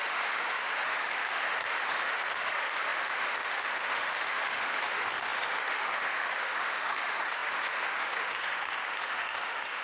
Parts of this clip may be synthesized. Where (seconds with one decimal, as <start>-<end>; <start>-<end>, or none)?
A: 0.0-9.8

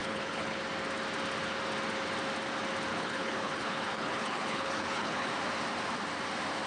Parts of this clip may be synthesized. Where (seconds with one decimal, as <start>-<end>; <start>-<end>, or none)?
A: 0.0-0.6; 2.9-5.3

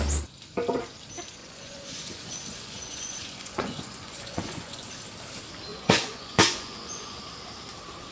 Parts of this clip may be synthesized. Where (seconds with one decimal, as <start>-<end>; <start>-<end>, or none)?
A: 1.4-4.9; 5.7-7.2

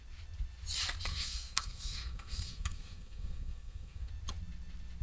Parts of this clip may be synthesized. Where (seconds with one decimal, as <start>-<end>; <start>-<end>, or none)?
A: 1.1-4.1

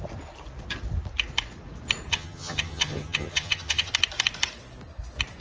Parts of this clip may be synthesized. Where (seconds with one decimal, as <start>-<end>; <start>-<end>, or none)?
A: 2.1-3.9

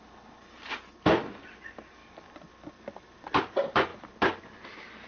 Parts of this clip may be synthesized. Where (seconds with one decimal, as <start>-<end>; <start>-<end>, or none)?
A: none